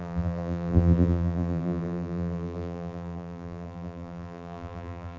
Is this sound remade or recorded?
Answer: remade